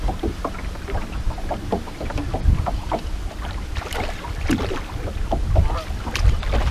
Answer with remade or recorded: recorded